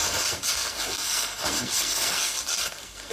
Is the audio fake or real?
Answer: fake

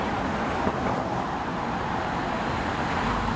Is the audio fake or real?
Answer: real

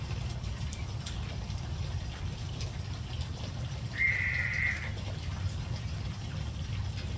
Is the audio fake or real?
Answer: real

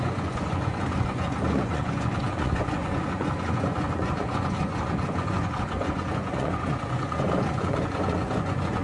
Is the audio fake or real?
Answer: fake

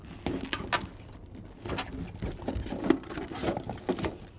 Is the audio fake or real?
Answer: real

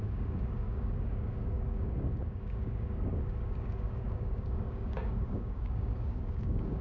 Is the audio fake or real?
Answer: fake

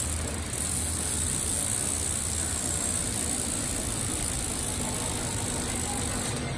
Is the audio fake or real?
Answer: real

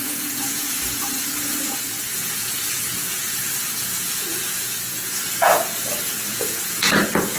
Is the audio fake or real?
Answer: fake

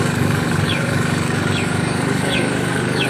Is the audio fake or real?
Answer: fake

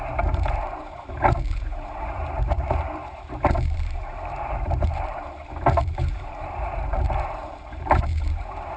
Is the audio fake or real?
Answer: fake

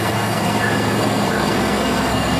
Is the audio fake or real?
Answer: fake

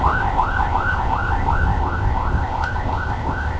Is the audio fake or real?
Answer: fake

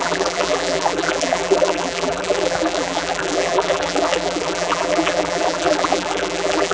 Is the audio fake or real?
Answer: fake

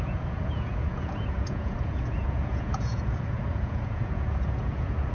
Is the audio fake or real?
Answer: fake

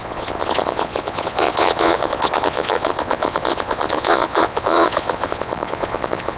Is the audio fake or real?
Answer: fake